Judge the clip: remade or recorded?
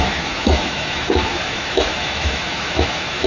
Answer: remade